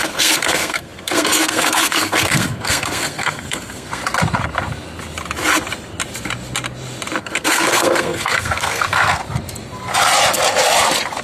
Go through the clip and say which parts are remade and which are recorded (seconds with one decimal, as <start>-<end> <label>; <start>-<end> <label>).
0.0-4.0 remade; 4.0-7.2 recorded; 7.2-9.2 remade; 9.2-11.2 recorded